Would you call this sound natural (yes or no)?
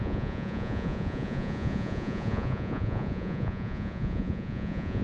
no